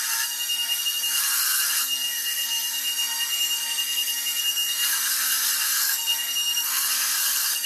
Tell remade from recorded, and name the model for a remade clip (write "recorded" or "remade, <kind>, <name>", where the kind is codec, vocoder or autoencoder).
remade, codec, SNAC